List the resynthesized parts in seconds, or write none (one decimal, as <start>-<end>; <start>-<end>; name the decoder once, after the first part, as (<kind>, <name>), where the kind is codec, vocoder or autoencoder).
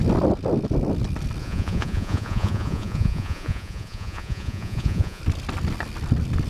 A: 1.4-5.2 (vocoder, Vocos)